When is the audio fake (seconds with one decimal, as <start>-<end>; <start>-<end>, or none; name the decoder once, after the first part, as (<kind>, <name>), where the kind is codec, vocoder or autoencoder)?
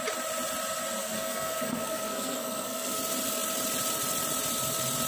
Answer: 1.0-3.0 (codec, SNAC)